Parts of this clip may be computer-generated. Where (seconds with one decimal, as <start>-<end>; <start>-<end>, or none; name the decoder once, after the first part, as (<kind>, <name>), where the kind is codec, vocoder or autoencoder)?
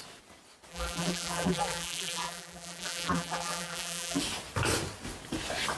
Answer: 0.7-4.2 (vocoder, BigVGAN v2)